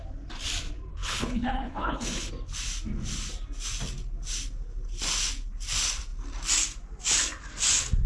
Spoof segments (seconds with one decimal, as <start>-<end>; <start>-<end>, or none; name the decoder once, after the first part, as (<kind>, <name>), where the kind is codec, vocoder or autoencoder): 0.9-2.3 (codec, HILCodec)